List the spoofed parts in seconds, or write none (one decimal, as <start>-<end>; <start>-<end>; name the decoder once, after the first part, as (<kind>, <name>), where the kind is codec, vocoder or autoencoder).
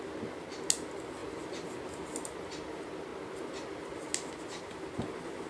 1.2-1.8 (vocoder, BigVGAN v2)